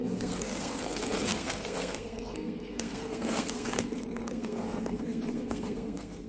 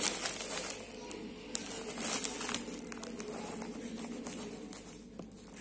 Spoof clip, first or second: first